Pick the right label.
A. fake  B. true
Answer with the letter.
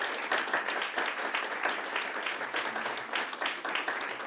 B